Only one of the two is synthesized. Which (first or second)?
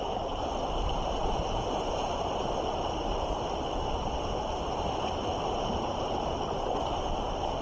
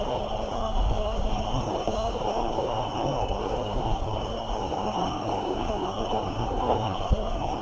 second